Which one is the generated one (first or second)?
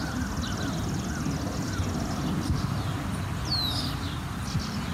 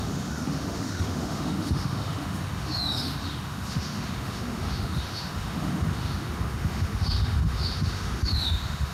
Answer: second